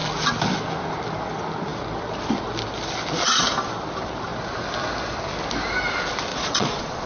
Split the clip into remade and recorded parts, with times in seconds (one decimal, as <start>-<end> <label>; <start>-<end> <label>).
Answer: 0.0-6.3 recorded; 6.3-7.1 remade